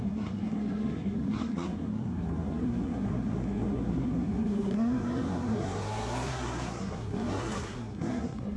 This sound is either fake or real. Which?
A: fake